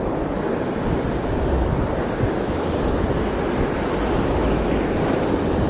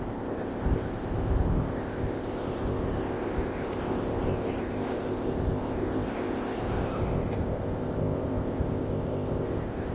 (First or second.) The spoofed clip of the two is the second